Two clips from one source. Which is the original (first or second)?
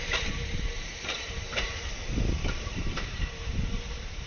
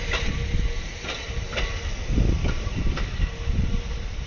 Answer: second